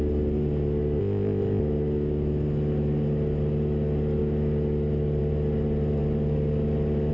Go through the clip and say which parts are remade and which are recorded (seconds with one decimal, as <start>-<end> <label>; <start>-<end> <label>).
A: 0.0-1.0 recorded; 1.0-1.6 remade; 1.6-7.1 recorded